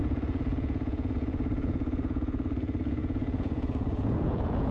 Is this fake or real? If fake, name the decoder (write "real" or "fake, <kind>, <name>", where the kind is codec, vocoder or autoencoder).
fake, vocoder, Vocos